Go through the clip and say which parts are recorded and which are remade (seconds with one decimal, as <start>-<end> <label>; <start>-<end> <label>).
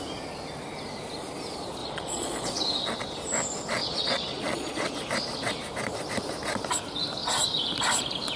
0.0-1.8 recorded; 1.8-2.6 remade; 2.6-3.8 recorded; 3.8-4.9 remade; 4.9-8.4 recorded